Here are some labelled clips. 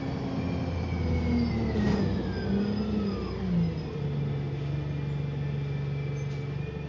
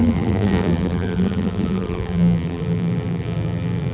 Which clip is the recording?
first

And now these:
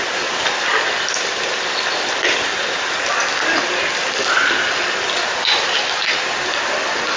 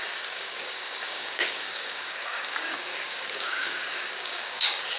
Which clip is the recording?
first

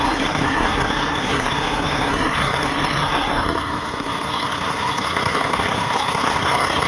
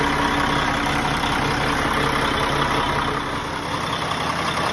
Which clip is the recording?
second